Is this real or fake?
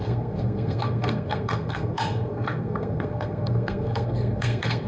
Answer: fake